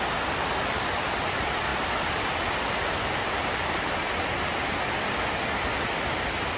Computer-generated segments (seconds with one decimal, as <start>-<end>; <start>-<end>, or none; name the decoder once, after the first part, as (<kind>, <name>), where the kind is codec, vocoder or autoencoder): none